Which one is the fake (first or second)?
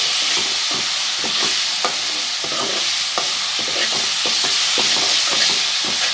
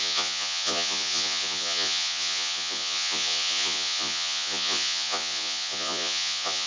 second